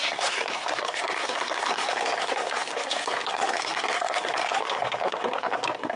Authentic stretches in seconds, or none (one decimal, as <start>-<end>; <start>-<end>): none